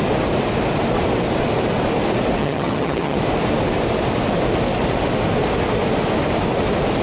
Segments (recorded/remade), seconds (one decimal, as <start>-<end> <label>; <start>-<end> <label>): 0.0-2.4 recorded; 2.4-3.2 remade; 3.2-7.0 recorded